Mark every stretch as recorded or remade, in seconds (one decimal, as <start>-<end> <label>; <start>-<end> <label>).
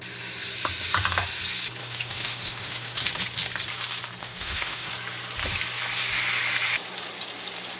0.0-1.8 recorded; 1.8-3.1 remade; 3.1-4.2 recorded; 4.2-4.9 remade; 4.9-7.8 recorded